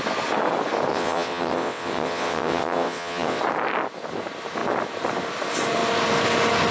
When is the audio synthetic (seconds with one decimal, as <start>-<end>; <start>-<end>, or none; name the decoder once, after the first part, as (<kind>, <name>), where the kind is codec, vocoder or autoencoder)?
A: 0.9-3.4 (vocoder, WaveNeXt)